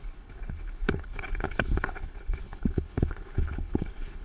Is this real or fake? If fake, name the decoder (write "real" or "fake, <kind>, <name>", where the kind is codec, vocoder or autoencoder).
fake, codec, HILCodec